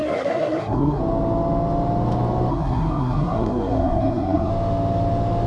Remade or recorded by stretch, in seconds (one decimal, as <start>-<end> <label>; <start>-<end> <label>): 0.0-1.0 remade; 1.0-2.5 recorded; 2.5-4.5 remade; 4.5-5.5 recorded